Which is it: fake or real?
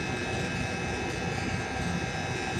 real